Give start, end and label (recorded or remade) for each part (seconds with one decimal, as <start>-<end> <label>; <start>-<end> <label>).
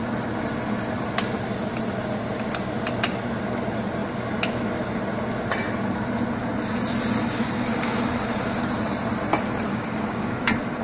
0.0-7.2 recorded; 7.2-8.6 remade; 8.6-9.7 recorded; 9.7-10.4 remade; 10.4-10.8 recorded